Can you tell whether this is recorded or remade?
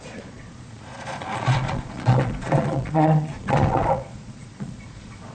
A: remade